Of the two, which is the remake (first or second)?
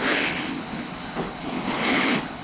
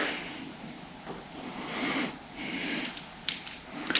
first